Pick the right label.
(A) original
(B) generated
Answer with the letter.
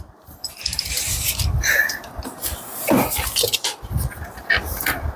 B